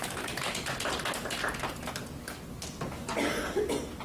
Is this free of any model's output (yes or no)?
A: yes